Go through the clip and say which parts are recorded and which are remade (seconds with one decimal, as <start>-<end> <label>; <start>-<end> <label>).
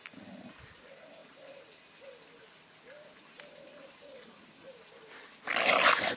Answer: 0.0-6.2 recorded